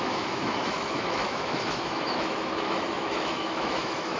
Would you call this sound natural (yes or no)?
no